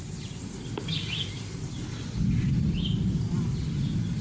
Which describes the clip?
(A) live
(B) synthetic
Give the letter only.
A